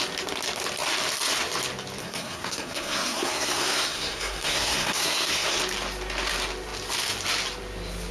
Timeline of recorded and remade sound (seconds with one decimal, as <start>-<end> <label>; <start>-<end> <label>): 0.0-2.0 recorded; 2.0-5.6 remade; 5.6-8.1 recorded